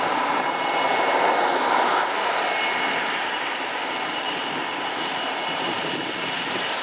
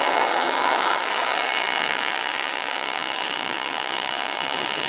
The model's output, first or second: second